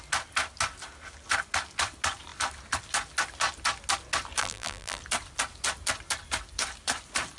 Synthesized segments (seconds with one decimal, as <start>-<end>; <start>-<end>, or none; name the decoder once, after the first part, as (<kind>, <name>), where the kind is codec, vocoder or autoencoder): 4.4-5.0 (vocoder, BigVGAN v2)